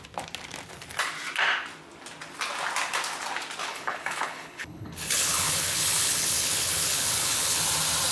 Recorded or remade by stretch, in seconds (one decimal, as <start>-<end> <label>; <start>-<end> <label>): 0.0-3.6 recorded; 3.6-7.6 remade; 7.6-8.1 recorded